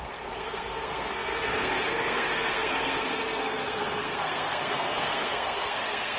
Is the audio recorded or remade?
remade